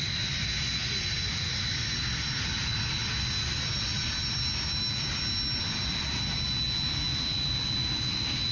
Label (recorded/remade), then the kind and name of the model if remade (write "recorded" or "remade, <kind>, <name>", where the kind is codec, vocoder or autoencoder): recorded